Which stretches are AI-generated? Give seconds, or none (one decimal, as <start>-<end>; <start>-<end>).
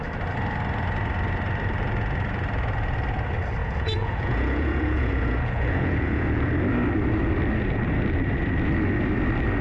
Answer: 3.6-6.5